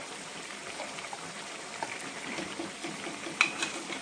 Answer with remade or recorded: recorded